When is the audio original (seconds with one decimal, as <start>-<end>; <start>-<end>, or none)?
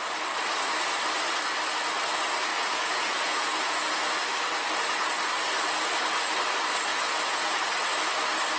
0.0-2.5; 4.2-6.9; 7.6-8.6